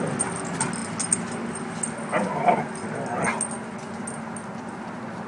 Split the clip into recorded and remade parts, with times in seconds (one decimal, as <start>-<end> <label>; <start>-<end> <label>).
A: 0.0-5.3 recorded